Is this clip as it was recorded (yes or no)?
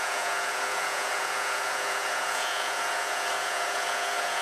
no